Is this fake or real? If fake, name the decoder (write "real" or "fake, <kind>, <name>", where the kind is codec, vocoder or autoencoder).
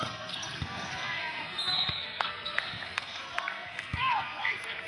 fake, codec, SNAC